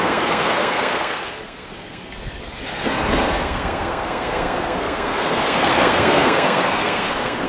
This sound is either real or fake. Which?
fake